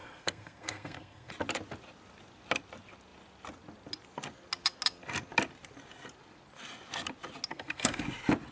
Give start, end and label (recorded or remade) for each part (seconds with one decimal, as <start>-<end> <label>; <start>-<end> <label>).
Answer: 0.0-1.3 remade; 1.3-7.5 recorded; 7.5-8.0 remade; 8.0-8.5 recorded